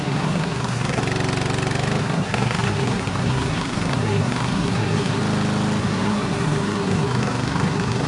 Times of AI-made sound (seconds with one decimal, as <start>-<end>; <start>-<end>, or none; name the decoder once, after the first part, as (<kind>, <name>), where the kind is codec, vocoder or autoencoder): 0.0-1.0 (codec, SNAC); 2.0-5.2; 5.8-8.1